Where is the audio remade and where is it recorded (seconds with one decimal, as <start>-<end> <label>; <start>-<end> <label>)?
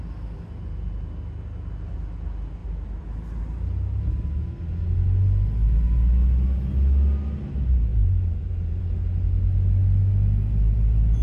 0.0-7.9 recorded; 7.9-8.8 remade; 8.8-11.2 recorded